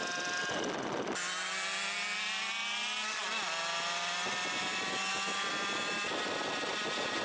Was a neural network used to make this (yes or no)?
no